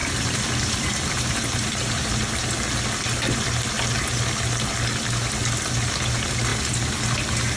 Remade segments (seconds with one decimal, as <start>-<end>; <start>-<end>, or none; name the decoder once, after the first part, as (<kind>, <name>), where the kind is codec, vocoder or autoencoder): 0.0-2.1 (vocoder, BigVGAN v2)

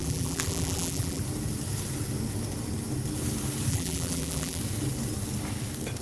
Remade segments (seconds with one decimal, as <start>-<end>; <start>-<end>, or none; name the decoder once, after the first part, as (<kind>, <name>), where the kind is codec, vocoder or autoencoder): 0.0-1.2 (vocoder, BigVGAN v2); 3.7-4.6

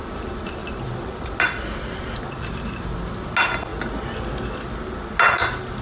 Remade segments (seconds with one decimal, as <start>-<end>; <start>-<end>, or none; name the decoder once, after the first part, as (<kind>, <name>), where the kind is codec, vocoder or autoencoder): 0.6-2.0 (vocoder, BigVGAN v2)

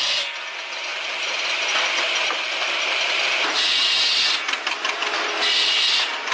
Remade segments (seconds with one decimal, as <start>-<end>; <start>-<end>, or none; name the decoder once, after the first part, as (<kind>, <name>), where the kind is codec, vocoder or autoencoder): none

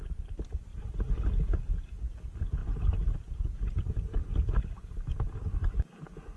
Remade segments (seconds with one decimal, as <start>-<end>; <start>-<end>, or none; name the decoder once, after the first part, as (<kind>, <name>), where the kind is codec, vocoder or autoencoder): none